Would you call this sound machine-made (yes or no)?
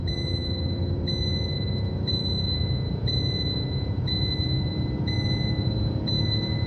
yes